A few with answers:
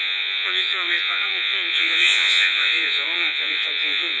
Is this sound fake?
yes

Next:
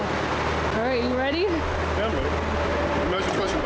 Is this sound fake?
no